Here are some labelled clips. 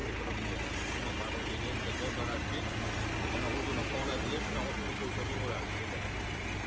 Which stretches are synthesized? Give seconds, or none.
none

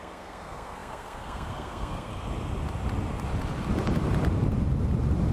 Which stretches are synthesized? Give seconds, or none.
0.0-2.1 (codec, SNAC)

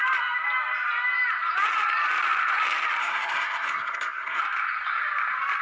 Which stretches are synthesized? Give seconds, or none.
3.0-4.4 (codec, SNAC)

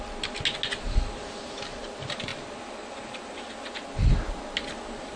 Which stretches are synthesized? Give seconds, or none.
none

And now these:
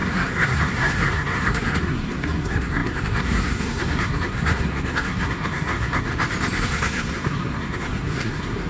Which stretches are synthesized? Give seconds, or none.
0.0-6.1 (codec, SNAC); 6.6-8.7

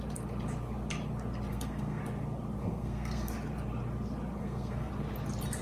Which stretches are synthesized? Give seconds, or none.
1.5-2.0 (codec, SNAC); 2.6-3.3; 4.4-4.9

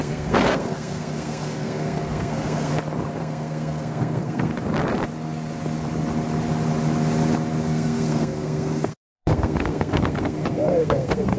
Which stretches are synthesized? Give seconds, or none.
0.0-2.7 (codec, SNAC); 3.2-4.5; 7.6-11.4